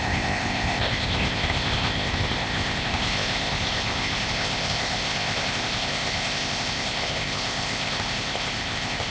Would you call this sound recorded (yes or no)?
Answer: no